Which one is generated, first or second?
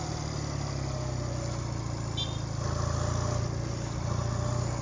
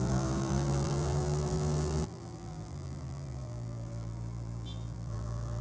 second